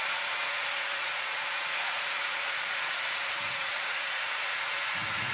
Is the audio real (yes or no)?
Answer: no